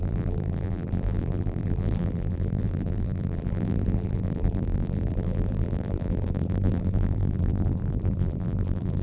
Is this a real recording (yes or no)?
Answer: no